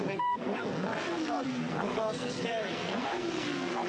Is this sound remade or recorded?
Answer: remade